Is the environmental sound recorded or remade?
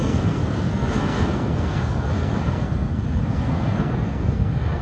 remade